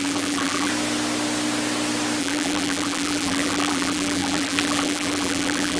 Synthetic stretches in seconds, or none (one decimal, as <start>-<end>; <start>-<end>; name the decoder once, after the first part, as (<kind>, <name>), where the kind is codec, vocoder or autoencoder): 0.0-0.7 (vocoder, BigVGAN v2); 2.2-5.8